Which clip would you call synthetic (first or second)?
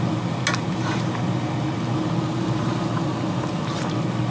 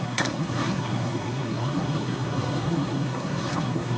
second